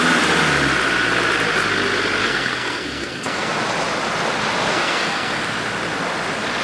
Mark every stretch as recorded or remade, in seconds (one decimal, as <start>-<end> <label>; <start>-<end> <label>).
0.0-2.2 recorded; 2.2-3.5 remade; 3.5-4.7 recorded; 4.7-5.4 remade; 5.4-6.6 recorded